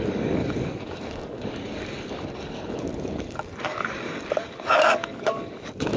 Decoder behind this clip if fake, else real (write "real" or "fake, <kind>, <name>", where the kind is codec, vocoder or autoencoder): fake, codec, DAC